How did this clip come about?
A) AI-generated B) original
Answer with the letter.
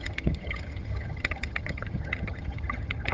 A